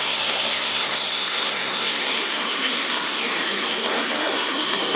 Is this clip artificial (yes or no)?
yes